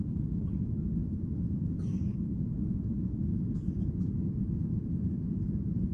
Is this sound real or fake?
fake